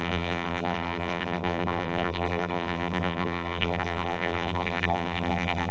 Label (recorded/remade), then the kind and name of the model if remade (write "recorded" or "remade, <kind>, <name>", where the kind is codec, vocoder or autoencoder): remade, vocoder, BigVGAN v2